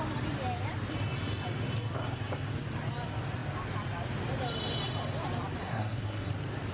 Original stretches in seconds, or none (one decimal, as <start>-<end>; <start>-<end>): 0.0-5.6; 6.3-6.7